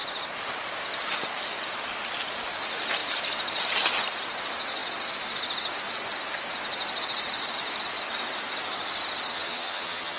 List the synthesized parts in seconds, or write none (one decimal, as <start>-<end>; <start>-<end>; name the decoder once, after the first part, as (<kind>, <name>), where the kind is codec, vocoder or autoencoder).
9.3-10.2 (vocoder, HiFi-GAN)